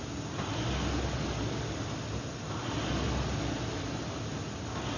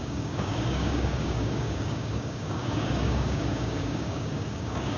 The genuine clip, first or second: first